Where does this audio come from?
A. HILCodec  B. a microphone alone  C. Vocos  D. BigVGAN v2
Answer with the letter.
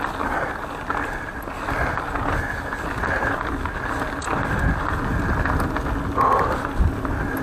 B